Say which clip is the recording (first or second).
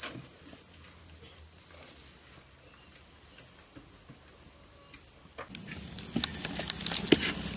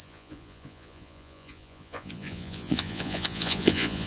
first